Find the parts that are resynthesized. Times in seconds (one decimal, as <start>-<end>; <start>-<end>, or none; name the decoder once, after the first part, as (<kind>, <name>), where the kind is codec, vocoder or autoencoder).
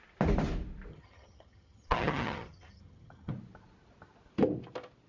0.9-3.3 (vocoder, HiFi-GAN)